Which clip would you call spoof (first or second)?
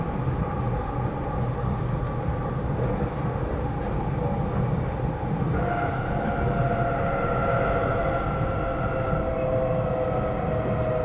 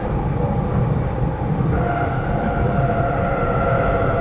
second